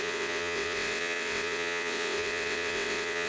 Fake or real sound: fake